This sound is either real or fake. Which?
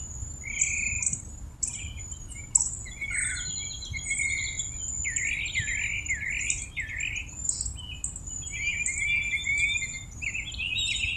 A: real